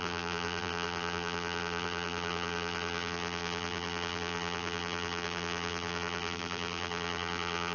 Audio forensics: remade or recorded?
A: remade